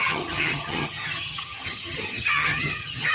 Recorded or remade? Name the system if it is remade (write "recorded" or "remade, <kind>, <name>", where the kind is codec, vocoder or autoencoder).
remade, vocoder, HiFi-GAN